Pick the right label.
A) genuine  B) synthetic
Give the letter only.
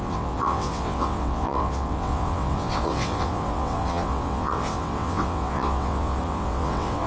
B